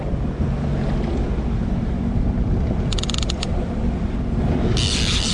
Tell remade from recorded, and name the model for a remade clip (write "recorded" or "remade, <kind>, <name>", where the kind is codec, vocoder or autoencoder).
remade, vocoder, BigVGAN v2